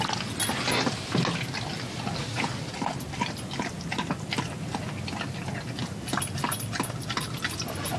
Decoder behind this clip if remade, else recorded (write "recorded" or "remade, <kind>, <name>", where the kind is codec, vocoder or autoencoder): recorded